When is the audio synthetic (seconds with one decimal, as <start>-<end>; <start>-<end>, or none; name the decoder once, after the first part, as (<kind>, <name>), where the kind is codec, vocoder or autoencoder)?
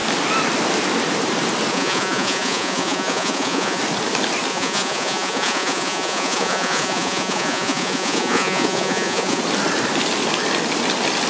1.7-3.8 (vocoder, Vocos); 4.5-9.4